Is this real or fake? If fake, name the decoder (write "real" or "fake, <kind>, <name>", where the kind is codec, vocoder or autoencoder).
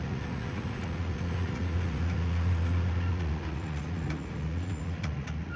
fake, vocoder, Vocos